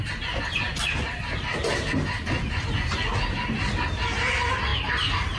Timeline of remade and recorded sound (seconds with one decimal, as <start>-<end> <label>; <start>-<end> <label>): 0.0-4.7 recorded; 4.7-5.4 remade